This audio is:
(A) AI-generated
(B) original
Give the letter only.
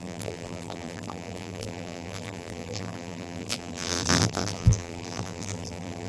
A